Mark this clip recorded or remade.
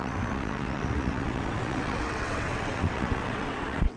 remade